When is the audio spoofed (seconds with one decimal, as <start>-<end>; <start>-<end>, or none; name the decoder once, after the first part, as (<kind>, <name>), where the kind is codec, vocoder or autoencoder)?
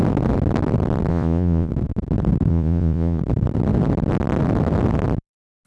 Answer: 1.1-1.7 (vocoder, Vocos); 2.5-3.2